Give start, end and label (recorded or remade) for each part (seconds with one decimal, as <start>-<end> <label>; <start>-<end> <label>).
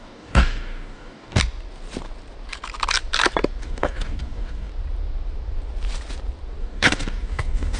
0.0-1.4 remade; 1.4-3.6 recorded; 3.6-4.7 remade; 4.7-6.6 recorded; 6.6-7.8 remade